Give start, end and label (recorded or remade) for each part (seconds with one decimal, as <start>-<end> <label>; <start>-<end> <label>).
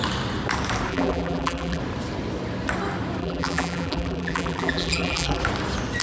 0.0-0.9 recorded; 0.9-1.8 remade; 1.8-3.2 recorded; 3.2-5.4 remade; 5.4-6.0 recorded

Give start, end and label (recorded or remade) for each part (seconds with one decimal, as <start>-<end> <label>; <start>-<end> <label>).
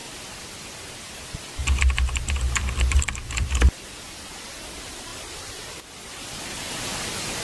0.0-0.9 remade; 0.9-1.6 recorded; 1.6-4.2 remade; 4.2-5.1 recorded; 5.1-6.8 remade; 6.8-7.4 recorded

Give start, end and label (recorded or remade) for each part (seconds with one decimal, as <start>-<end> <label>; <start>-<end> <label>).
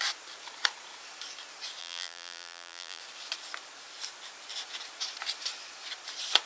0.0-1.8 recorded; 1.8-3.0 remade; 3.0-6.5 recorded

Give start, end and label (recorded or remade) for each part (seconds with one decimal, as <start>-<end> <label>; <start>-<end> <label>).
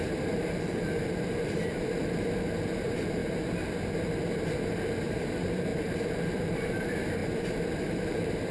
0.0-3.2 remade; 3.2-5.3 recorded; 5.3-8.5 remade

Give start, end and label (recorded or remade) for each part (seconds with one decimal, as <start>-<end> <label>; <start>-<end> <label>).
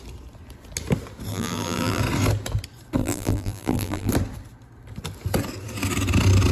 0.0-1.3 recorded; 1.3-2.0 remade; 2.0-3.0 recorded; 3.0-4.1 remade; 4.1-6.5 recorded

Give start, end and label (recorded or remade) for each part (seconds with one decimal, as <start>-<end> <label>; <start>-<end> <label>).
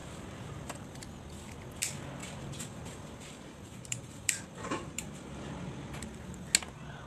0.0-1.0 remade; 1.0-2.2 recorded; 2.2-5.5 remade; 5.5-7.1 recorded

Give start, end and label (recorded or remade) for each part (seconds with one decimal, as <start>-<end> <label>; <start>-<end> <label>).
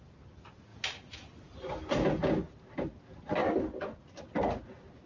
0.0-5.1 recorded